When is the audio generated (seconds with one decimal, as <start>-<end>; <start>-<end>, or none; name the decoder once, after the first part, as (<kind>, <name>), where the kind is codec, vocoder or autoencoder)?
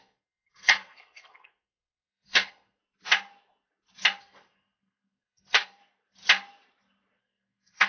0.0-2.8 (codec, SNAC); 4.2-5.8; 7.2-7.9